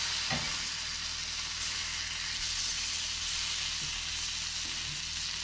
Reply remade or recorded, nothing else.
recorded